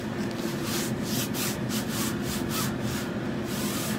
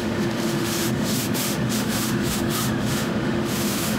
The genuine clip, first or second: first